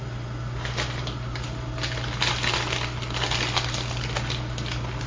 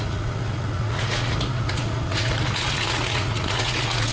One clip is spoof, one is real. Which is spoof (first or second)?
second